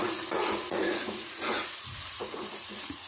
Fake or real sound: fake